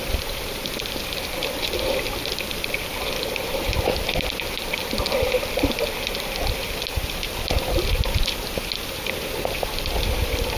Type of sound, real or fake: real